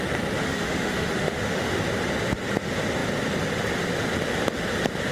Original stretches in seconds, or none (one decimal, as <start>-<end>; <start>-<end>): 0.0-0.4; 1.8-5.1